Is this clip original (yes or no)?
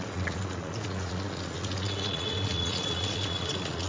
no